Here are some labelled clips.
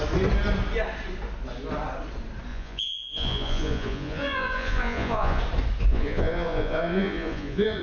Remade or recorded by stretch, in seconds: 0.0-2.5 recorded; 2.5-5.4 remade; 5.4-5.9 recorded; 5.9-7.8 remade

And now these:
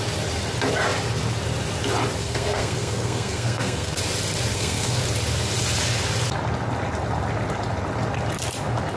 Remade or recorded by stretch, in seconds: 0.0-2.2 recorded; 2.2-4.0 remade; 4.0-4.5 recorded; 4.5-5.0 remade; 5.0-9.0 recorded

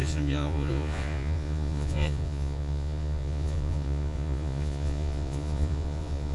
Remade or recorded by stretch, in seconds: 0.0-6.3 remade

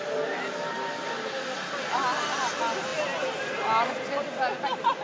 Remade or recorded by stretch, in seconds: 0.0-5.0 recorded

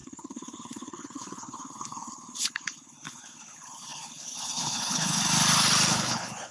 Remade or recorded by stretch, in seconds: 0.0-5.2 remade; 5.2-5.9 recorded; 5.9-6.5 remade